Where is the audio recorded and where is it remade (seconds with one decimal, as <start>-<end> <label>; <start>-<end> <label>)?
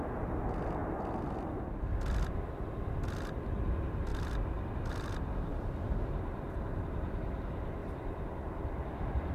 0.0-4.1 recorded; 4.1-4.9 remade; 4.9-5.5 recorded; 5.5-6.7 remade; 6.7-7.8 recorded; 7.8-9.3 remade